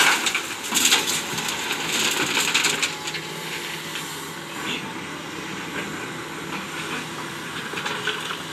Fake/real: real